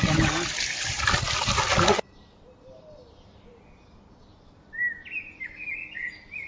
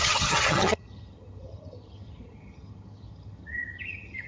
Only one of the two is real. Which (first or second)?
first